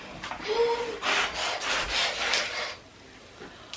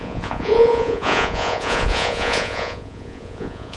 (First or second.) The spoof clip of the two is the second